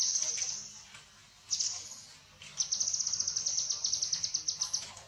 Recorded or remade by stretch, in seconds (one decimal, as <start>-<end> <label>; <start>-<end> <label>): 0.0-5.1 recorded